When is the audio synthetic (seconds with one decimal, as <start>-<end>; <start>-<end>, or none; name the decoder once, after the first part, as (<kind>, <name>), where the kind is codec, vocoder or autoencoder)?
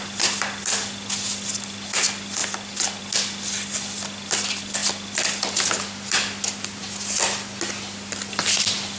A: none